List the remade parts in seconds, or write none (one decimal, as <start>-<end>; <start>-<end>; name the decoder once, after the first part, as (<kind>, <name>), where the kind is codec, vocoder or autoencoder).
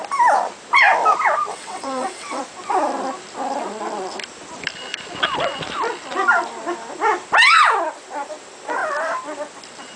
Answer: 1.5-2.4 (vocoder, WaveNeXt)